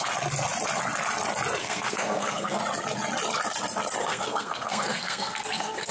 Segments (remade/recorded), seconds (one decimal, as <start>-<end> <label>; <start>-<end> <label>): 0.0-1.6 recorded; 1.6-2.6 remade; 2.6-4.0 recorded; 4.0-5.9 remade